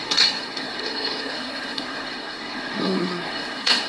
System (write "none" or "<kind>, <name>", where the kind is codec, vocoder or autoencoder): codec, SNAC